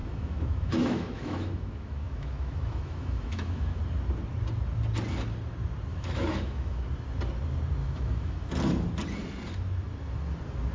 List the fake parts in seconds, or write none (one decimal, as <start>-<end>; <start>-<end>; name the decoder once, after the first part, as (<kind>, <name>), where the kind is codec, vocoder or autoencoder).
0.0-3.8 (autoencoder, DAC-VAE); 5.9-6.8; 7.8-8.5